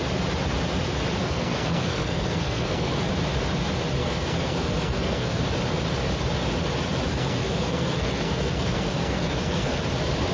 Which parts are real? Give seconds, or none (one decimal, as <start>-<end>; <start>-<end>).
0.0-1.2; 3.1-4.0; 5.4-7.1; 9.8-10.3